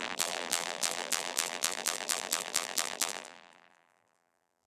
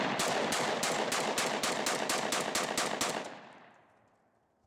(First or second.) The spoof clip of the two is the first